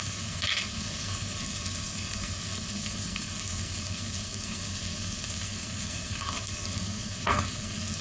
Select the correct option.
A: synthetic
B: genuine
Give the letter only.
A